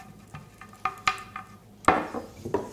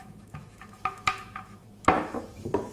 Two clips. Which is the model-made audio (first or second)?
second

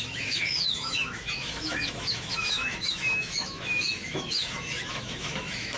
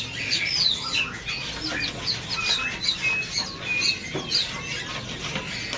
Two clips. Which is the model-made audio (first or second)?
first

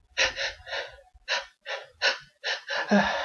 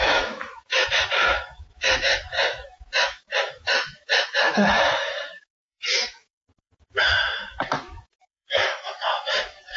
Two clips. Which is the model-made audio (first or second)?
second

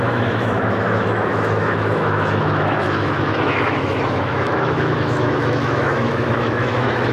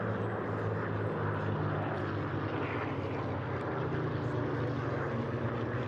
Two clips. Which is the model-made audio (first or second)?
first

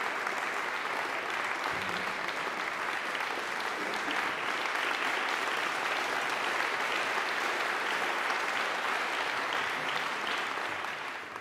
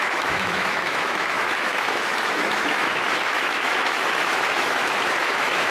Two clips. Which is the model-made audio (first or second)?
second